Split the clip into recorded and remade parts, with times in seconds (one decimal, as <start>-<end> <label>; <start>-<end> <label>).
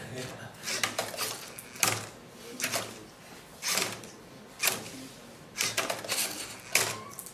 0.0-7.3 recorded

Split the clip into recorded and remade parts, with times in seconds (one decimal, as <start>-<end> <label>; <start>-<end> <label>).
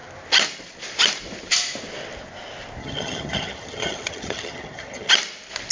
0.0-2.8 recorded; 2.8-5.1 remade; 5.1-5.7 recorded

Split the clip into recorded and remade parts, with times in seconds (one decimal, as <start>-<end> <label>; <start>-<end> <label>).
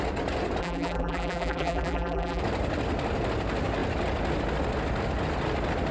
0.0-0.6 recorded; 0.6-2.4 remade; 2.4-5.9 recorded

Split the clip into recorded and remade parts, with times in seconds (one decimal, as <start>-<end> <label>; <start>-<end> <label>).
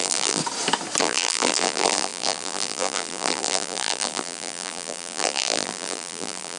0.0-0.4 remade; 0.4-1.0 recorded; 1.0-6.6 remade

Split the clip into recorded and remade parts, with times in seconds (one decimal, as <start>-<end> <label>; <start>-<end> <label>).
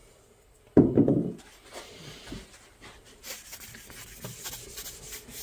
0.0-5.4 recorded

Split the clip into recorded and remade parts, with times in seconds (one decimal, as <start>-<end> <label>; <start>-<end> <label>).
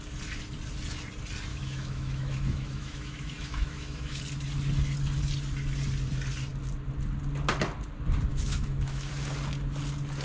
0.0-1.5 recorded; 1.5-4.2 remade; 4.2-8.3 recorded; 8.3-9.1 remade; 9.1-10.2 recorded